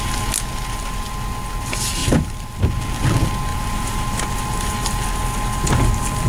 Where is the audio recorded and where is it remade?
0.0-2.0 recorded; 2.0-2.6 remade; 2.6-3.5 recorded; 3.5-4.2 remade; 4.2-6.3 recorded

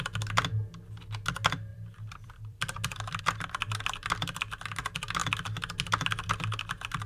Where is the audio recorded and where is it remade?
0.0-1.7 recorded; 1.7-3.2 remade; 3.2-7.1 recorded

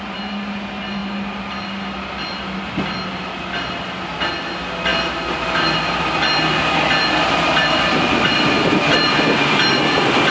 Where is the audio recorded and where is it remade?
0.0-10.3 recorded

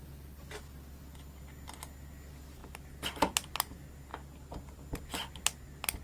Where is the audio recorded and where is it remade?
0.0-6.0 recorded

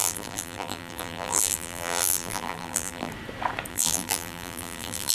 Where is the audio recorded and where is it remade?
0.0-3.1 remade; 3.1-3.7 recorded; 3.7-5.1 remade

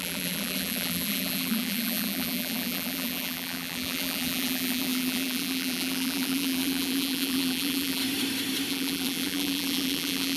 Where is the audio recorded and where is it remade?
0.0-8.0 remade; 8.0-8.7 recorded; 8.7-10.4 remade

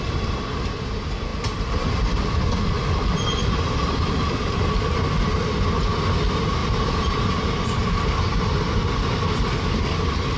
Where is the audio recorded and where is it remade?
0.0-6.6 recorded; 6.6-7.3 remade; 7.3-10.4 recorded